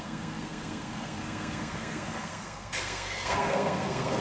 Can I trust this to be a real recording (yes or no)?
no